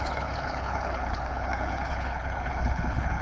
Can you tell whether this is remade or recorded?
remade